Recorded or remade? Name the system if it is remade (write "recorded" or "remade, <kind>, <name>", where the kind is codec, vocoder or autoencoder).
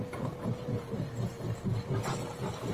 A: recorded